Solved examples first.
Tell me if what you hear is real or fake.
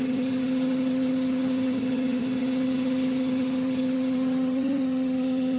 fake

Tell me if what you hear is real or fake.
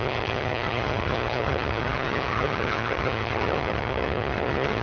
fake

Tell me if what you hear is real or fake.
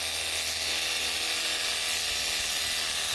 real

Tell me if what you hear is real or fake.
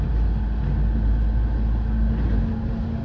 real